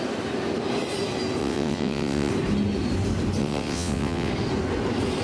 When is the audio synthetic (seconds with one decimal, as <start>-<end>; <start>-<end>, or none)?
1.4-2.3; 3.4-4.3